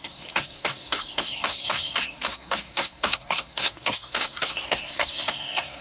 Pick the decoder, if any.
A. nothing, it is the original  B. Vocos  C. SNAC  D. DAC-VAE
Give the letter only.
C